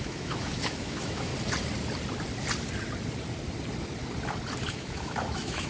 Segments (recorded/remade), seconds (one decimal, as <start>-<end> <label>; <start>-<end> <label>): 0.0-1.3 remade; 1.3-4.7 recorded; 4.7-5.7 remade